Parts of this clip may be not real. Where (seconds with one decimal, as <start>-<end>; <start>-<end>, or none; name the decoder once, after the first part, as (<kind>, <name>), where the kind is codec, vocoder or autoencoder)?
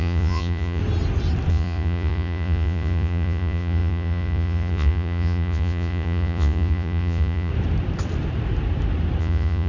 0.0-0.8 (vocoder, Vocos); 1.5-7.5; 9.2-9.7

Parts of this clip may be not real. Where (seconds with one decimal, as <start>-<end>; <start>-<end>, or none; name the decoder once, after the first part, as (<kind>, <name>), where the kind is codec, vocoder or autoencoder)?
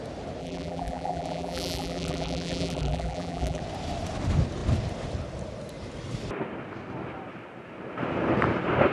0.4-3.6 (vocoder, BigVGAN v2)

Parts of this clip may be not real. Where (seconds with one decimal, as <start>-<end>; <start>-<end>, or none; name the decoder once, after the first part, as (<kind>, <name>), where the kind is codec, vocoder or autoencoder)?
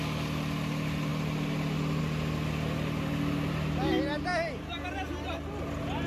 none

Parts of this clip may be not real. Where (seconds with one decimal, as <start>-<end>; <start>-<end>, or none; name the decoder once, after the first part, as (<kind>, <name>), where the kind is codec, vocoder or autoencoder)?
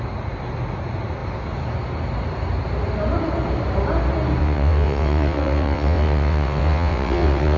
4.4-7.6 (vocoder, WaveNeXt)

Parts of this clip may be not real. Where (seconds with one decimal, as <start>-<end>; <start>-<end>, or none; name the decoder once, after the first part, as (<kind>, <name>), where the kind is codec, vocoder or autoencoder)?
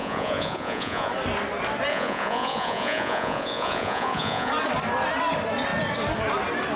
0.0-1.1 (vocoder, Vocos); 1.9-4.5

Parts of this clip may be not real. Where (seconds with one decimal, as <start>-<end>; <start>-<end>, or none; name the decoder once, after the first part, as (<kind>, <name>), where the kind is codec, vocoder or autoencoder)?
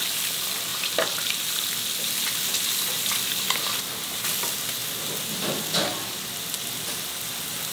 0.7-2.0 (vocoder, BigVGAN v2); 5.9-6.7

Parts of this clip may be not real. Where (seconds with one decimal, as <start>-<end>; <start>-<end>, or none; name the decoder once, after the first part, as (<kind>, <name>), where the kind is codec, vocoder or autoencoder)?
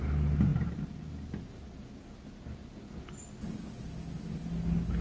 none